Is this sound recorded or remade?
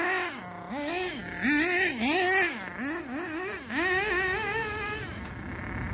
recorded